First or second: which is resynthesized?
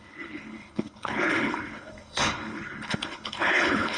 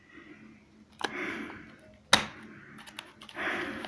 first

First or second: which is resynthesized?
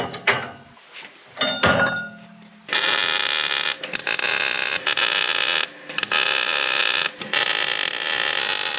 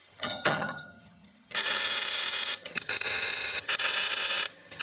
second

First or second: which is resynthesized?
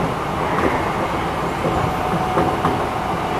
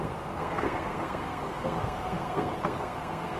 second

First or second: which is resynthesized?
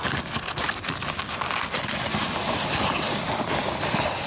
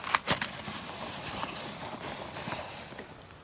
second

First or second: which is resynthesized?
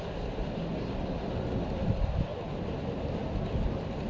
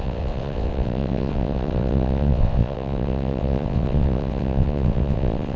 second